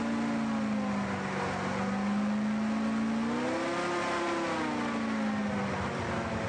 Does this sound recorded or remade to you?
recorded